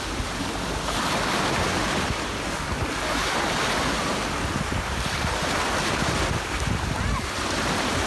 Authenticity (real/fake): fake